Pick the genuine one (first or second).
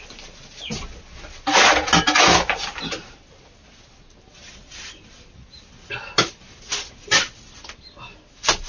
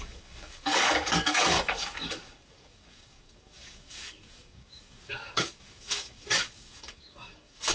first